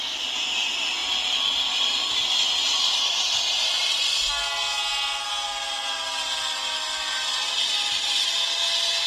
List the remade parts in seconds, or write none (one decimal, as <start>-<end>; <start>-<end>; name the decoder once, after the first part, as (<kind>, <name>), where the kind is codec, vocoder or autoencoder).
none